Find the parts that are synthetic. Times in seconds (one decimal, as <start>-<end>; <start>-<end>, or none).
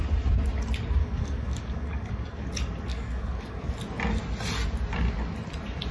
1.0-2.5; 2.9-3.7